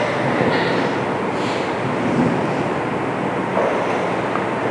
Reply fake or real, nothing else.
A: real